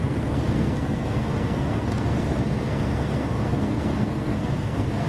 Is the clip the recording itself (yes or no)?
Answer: no